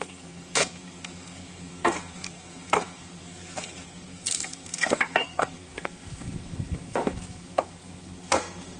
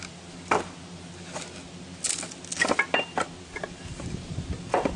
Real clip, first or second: second